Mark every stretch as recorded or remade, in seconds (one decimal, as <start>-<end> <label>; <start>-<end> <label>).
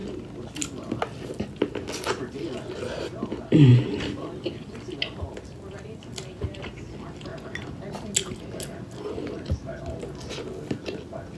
0.0-3.7 recorded; 3.7-6.6 remade; 6.6-11.4 recorded